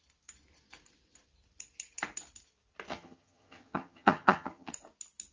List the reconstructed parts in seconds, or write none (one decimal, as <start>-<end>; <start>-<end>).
2.9-4.7